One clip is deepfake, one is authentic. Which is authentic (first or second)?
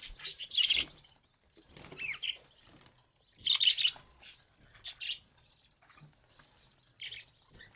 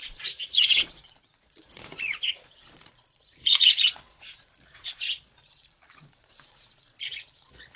first